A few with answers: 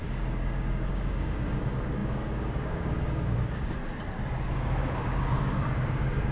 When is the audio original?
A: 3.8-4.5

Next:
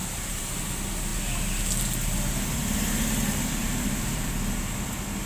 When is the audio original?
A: 0.6-3.6; 4.3-5.3

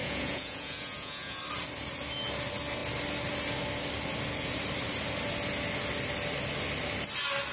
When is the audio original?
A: 1.4-7.5